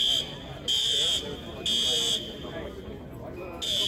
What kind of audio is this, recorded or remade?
recorded